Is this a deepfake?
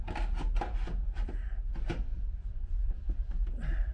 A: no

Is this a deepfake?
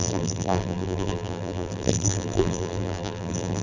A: yes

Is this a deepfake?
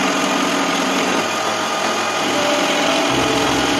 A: no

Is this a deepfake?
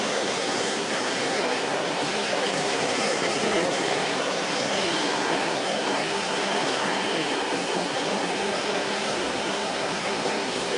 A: yes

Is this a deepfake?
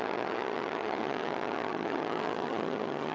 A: yes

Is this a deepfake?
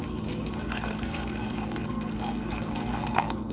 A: yes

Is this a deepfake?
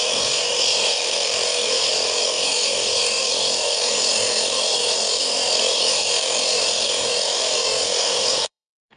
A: yes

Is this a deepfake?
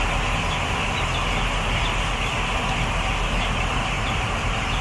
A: no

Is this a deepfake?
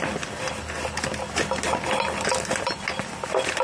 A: no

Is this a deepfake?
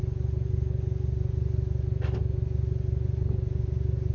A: no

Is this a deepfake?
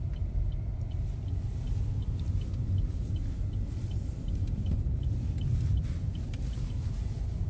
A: no